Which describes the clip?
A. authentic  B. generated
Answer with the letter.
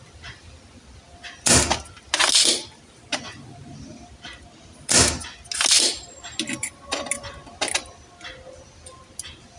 A